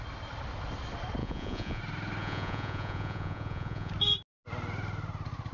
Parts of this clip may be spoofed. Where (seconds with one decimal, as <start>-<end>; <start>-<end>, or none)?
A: 1.2-1.8; 2.2-3.9